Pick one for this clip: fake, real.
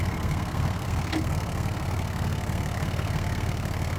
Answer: fake